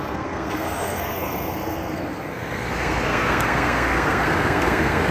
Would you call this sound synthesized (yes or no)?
yes